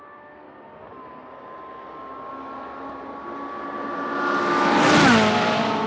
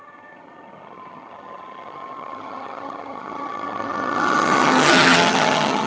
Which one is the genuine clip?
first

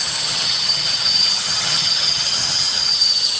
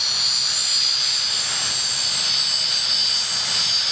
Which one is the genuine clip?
second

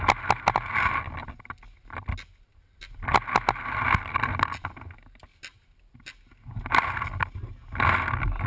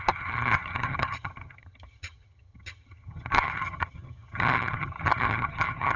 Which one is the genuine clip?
first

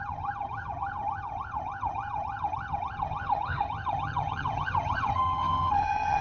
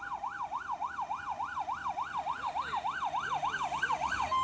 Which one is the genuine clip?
second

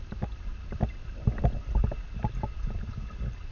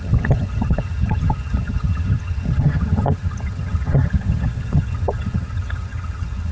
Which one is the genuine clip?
first